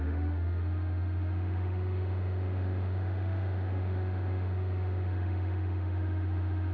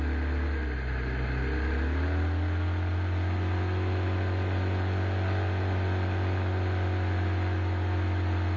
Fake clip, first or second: first